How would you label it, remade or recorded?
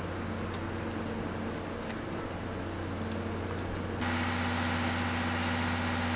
recorded